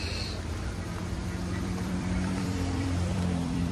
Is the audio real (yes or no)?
no